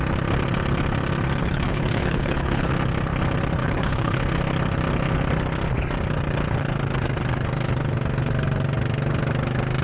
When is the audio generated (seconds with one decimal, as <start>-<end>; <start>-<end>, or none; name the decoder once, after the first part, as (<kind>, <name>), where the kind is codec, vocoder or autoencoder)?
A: 1.4-2.7 (codec, HILCodec); 3.6-4.2